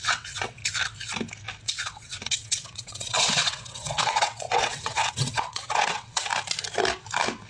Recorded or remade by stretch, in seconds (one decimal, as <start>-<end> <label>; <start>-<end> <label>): 0.0-0.6 remade; 0.6-1.6 recorded; 1.6-6.3 remade; 6.3-7.5 recorded